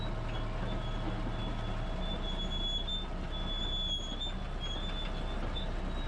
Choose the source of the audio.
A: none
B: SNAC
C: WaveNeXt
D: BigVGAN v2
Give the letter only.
A